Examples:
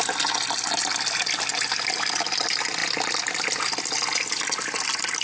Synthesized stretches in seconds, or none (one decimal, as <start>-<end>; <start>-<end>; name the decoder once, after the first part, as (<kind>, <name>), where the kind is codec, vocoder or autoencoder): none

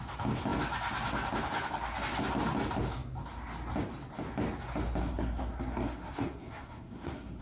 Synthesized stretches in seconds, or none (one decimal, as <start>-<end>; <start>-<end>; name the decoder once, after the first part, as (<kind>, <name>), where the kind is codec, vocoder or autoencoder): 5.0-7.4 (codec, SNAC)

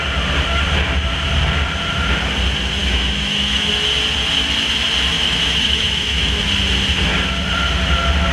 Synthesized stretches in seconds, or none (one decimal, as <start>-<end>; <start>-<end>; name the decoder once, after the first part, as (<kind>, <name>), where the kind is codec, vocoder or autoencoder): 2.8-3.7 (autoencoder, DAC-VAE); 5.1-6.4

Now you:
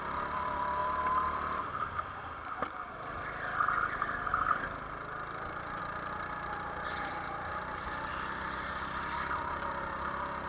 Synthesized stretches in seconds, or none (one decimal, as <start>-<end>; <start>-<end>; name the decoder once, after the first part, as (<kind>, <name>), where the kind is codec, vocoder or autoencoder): none

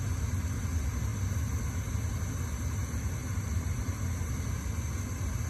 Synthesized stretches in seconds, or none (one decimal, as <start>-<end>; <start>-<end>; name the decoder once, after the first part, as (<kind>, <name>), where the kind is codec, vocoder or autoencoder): none

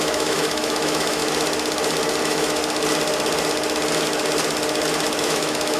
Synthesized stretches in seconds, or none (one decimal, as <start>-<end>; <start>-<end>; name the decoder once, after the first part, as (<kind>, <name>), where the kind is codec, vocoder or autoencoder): 0.0-1.2 (autoencoder, DAC-VAE); 2.2-2.6; 5.2-5.8

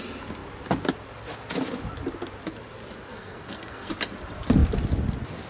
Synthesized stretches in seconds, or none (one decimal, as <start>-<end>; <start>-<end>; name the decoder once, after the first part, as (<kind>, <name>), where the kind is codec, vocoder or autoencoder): 3.1-3.9 (codec, SNAC)

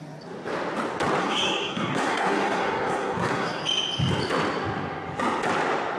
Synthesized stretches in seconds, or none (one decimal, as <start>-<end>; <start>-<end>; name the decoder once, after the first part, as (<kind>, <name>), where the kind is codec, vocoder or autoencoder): 1.2-3.6 (codec, SNAC)